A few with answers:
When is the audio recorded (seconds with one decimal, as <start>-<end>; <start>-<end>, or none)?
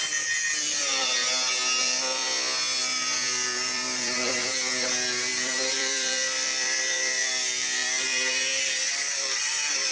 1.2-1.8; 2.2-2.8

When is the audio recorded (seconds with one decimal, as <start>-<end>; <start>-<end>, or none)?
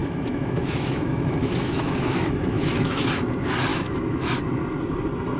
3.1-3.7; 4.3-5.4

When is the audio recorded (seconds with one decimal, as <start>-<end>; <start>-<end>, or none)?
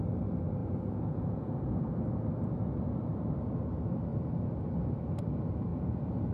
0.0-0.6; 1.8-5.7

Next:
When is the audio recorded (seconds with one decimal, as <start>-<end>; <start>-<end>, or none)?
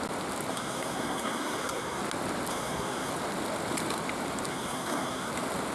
0.0-0.5; 2.0-2.5; 3.1-4.5; 5.3-5.7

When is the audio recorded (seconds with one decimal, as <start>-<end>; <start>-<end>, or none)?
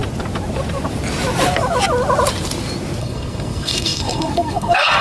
0.0-3.0